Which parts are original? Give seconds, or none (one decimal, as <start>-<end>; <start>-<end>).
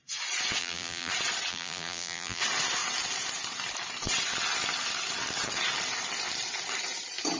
0.0-0.6; 1.1-1.5; 2.4-7.4